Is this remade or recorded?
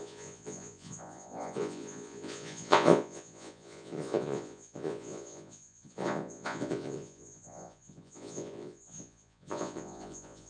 remade